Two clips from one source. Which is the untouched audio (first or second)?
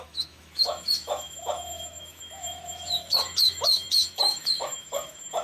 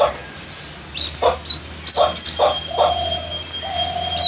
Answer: second